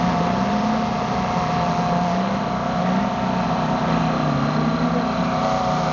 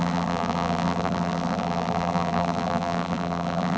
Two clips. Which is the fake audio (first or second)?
second